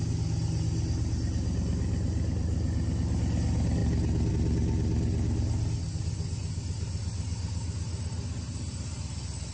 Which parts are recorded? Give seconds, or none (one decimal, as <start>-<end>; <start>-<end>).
0.0-9.5